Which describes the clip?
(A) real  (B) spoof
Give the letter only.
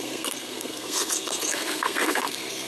B